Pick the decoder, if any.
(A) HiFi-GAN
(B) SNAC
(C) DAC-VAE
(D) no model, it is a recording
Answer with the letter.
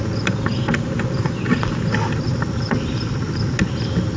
D